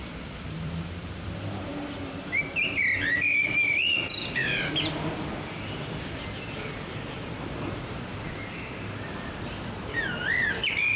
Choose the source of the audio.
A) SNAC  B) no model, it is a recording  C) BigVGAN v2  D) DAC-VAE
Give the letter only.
C